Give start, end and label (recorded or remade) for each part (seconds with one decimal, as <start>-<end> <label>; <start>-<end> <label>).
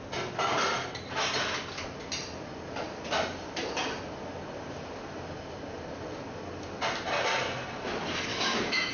0.0-8.3 recorded; 8.3-8.9 remade